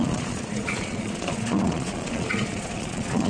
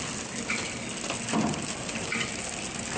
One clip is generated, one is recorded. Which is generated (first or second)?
first